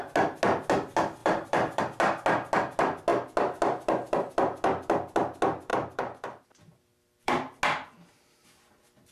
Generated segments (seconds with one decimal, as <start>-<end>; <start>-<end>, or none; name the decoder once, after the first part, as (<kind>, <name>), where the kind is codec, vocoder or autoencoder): 1.2-1.8 (vocoder, BigVGAN v2); 5.7-7.6

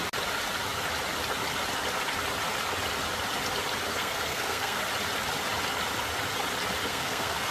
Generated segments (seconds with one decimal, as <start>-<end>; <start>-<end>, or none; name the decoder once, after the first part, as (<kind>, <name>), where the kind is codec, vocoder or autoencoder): 3.9-4.8 (codec, SNAC); 6.9-7.5

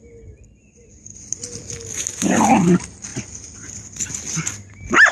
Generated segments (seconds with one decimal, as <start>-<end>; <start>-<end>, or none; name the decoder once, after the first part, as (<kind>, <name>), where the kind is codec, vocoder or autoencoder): none

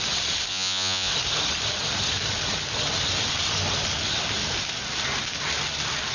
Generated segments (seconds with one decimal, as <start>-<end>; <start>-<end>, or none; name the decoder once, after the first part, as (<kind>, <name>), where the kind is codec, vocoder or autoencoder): 0.5-1.1 (vocoder, Vocos)